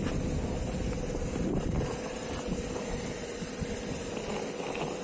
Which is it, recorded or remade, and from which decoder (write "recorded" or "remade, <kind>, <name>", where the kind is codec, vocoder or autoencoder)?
recorded